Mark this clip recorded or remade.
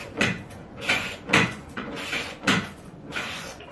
remade